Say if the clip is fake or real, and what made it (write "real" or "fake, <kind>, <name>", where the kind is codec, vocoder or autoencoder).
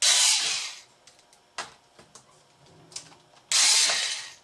real